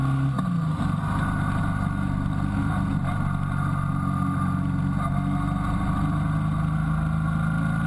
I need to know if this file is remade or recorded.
recorded